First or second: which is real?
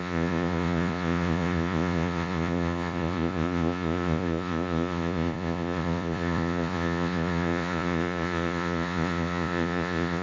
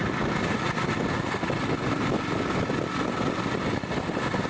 second